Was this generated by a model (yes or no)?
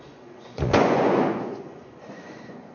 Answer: yes